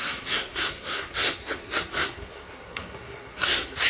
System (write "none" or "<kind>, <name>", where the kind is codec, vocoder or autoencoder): codec, SNAC